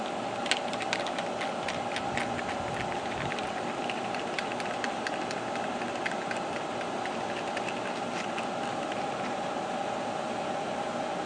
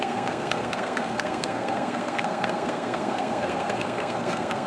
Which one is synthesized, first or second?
second